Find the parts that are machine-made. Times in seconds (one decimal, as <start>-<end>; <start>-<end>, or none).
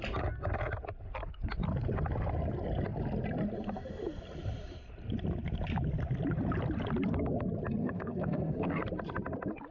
7.8-8.8